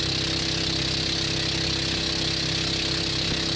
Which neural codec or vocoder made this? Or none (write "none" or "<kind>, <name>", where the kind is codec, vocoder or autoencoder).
none